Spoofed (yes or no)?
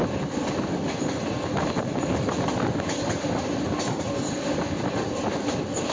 no